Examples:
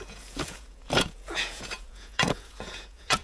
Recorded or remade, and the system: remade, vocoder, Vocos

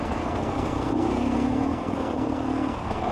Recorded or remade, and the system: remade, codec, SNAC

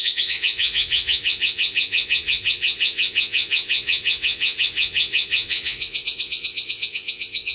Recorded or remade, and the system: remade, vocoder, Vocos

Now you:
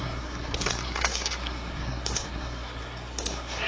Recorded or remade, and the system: remade, codec, SNAC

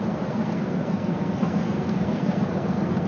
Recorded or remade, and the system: remade, codec, SNAC